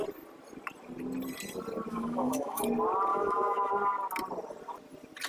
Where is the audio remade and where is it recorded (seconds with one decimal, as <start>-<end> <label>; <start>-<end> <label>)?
0.0-1.9 recorded; 1.9-2.6 remade; 2.6-3.1 recorded; 3.1-3.7 remade; 3.7-5.3 recorded